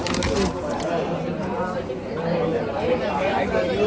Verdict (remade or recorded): recorded